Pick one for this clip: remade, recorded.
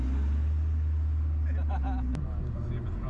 recorded